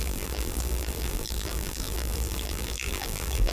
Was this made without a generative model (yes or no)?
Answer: no